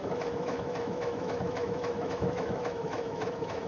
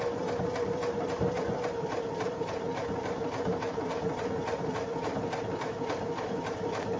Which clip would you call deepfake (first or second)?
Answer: first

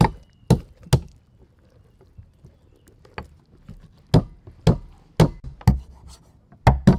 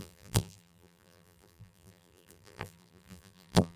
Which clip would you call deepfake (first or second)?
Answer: second